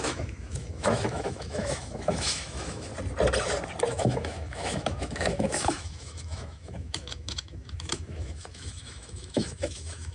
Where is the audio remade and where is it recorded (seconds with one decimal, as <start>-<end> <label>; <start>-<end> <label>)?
0.0-2.9 remade; 2.9-3.9 recorded; 3.9-10.1 remade